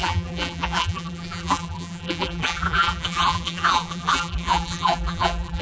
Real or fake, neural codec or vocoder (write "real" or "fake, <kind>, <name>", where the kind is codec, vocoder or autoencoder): fake, vocoder, BigVGAN v2